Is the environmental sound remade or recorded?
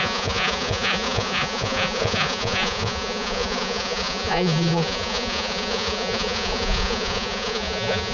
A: remade